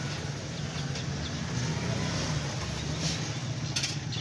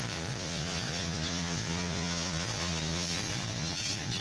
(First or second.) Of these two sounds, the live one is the first